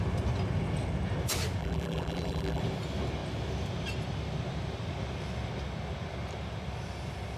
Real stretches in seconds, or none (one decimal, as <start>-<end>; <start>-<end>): 0.0-1.6; 2.6-7.4